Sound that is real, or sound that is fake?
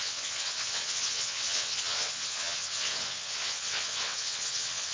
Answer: fake